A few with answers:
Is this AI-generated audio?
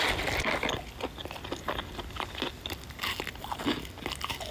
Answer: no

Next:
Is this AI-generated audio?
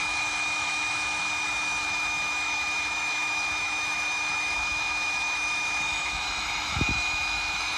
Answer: yes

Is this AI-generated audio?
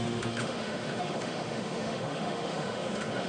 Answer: yes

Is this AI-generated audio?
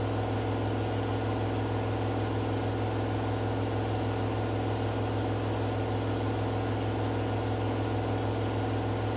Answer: no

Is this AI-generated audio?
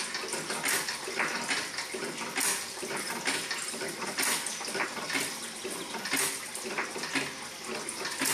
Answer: no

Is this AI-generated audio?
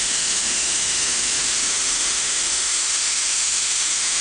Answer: yes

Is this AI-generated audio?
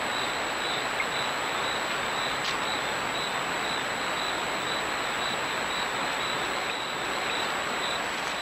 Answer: no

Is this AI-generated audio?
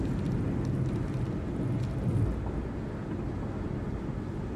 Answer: no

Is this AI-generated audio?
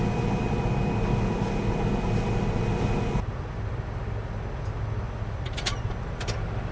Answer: no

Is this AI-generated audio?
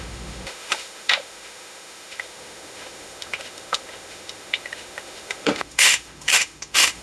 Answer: yes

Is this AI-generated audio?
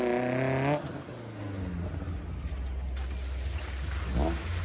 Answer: no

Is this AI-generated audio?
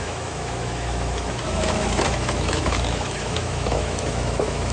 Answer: yes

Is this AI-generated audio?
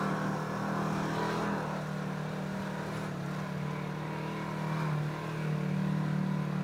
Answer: no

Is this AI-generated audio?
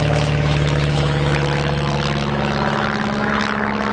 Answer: yes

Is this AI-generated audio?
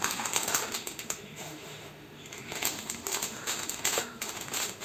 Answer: yes